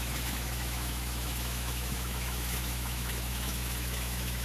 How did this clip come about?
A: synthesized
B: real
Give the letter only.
A